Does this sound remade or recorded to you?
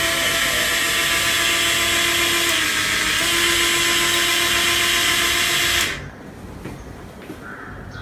recorded